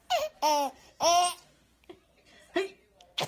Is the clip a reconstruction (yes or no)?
no